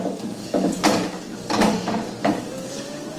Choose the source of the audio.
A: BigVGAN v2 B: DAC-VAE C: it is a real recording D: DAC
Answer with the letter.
D